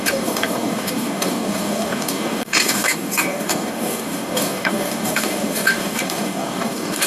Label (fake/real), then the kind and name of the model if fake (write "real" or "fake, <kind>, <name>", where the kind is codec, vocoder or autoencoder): fake, codec, DAC